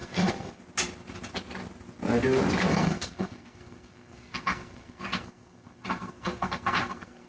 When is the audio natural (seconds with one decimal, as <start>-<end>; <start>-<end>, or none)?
0.6-2.7